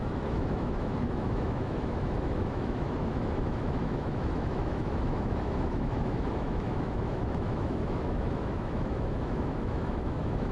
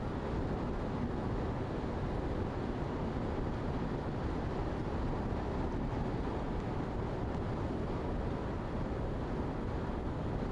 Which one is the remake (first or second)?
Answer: first